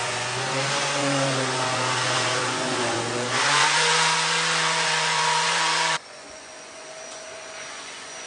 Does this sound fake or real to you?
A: fake